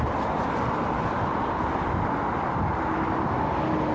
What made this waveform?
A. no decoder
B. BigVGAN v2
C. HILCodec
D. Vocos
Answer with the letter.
A